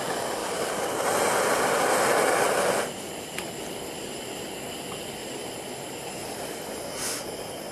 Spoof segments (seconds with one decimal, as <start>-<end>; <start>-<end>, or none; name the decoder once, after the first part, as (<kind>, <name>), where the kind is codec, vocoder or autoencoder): none